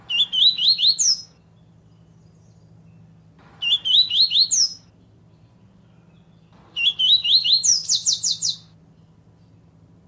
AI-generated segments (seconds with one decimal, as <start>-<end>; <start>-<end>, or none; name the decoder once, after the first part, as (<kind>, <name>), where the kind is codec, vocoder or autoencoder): none